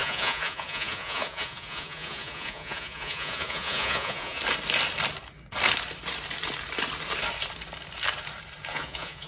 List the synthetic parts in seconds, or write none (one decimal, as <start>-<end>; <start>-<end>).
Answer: 0.0-4.4; 8.7-9.3